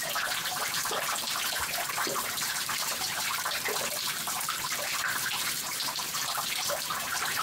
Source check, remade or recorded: remade